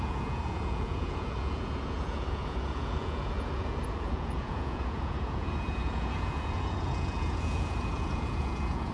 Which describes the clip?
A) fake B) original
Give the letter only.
A